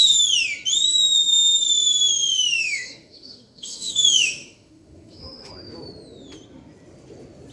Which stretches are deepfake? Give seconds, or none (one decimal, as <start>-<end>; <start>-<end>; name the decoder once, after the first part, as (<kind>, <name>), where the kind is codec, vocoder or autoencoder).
2.6-5.5 (autoencoder, DAC-VAE)